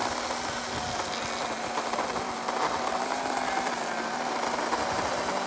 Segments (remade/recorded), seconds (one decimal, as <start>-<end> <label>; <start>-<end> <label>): 0.0-5.5 recorded